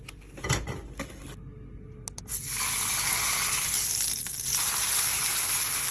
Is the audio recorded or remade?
recorded